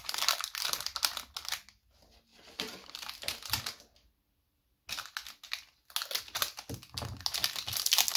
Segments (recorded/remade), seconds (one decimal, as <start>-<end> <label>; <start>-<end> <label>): 0.0-8.2 recorded